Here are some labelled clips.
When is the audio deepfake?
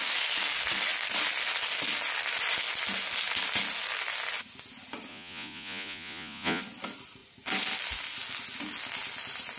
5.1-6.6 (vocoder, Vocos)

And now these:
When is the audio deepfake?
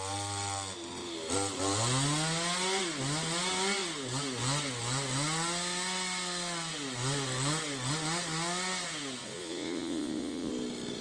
9.2-10.5 (vocoder, Vocos)